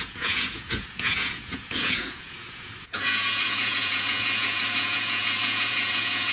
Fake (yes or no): yes